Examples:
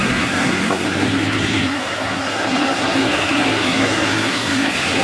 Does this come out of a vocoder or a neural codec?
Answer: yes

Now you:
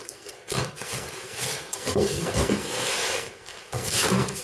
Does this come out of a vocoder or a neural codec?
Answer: yes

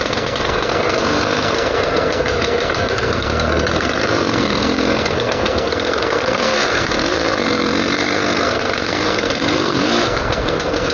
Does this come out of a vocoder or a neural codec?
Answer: yes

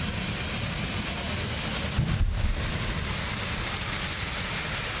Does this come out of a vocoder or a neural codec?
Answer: no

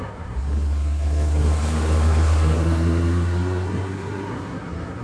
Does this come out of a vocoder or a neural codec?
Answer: yes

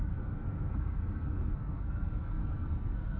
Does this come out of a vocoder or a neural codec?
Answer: yes